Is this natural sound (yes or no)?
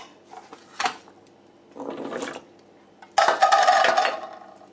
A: yes